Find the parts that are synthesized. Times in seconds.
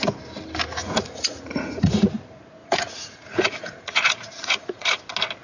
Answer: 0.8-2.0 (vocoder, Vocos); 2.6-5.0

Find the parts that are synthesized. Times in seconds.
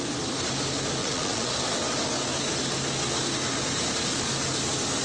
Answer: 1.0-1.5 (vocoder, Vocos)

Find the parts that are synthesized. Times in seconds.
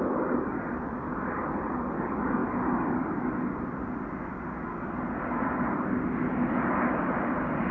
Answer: none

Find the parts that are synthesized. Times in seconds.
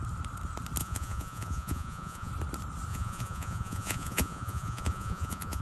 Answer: 0.8-2.3 (vocoder, Vocos); 2.9-5.6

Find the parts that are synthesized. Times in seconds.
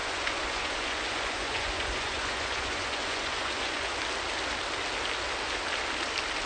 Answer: 0.0-3.9 (vocoder, Vocos)